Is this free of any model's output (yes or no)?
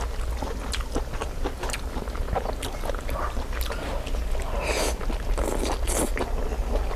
yes